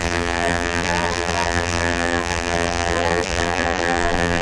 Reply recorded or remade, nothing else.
remade